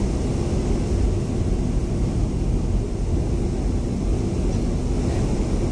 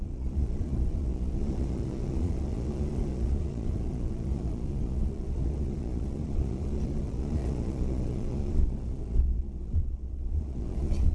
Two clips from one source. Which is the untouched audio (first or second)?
first